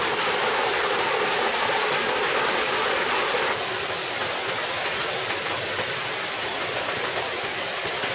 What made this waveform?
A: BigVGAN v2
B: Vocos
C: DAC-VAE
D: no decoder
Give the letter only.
A